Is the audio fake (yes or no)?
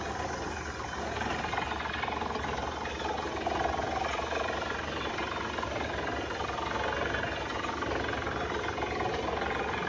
no